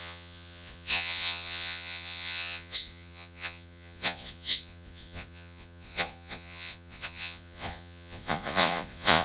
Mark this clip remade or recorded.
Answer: remade